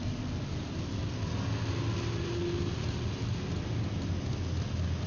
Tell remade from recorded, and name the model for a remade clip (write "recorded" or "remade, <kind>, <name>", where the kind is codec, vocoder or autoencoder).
recorded